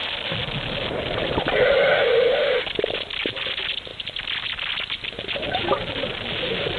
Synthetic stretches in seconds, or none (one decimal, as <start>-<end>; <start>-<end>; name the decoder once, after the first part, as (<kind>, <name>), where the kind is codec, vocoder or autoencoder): none